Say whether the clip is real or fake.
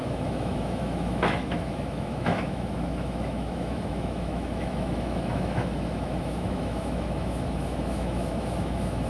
fake